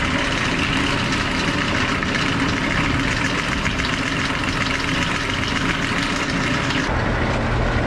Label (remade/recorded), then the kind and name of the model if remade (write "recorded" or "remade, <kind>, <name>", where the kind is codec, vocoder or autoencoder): recorded